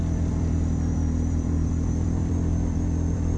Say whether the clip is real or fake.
fake